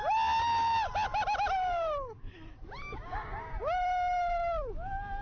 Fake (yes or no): no